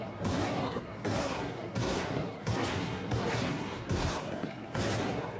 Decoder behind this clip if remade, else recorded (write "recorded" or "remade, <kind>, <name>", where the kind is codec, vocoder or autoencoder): remade, codec, SNAC